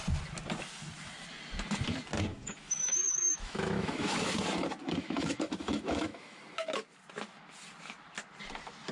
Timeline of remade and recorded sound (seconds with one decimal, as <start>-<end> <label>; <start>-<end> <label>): 0.0-2.3 recorded; 2.3-4.3 remade; 4.3-4.8 recorded; 4.8-6.4 remade; 6.4-8.9 recorded